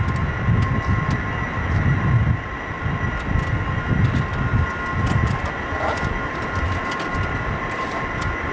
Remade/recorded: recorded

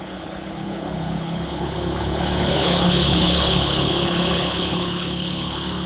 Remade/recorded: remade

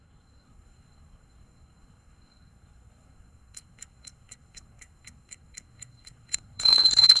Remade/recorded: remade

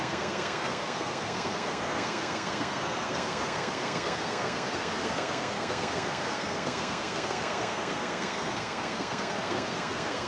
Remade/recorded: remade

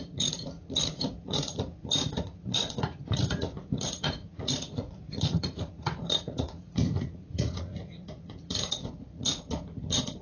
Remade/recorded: remade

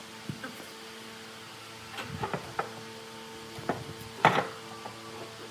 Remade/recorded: recorded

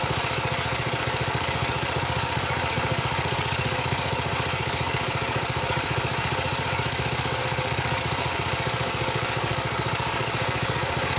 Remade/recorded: remade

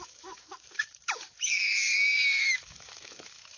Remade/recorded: remade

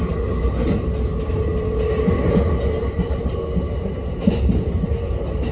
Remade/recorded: recorded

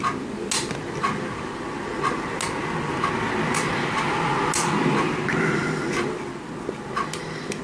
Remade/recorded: recorded